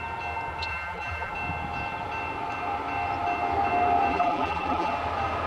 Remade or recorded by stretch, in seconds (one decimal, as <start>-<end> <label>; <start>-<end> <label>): 0.0-0.7 recorded; 0.7-1.3 remade; 1.3-4.1 recorded; 4.1-4.9 remade; 4.9-5.5 recorded